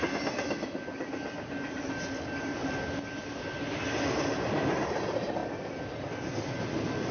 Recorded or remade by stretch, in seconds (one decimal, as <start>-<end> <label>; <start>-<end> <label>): 0.0-7.1 recorded